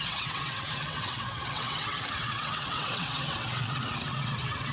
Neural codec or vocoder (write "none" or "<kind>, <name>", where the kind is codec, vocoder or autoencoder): vocoder, WaveNeXt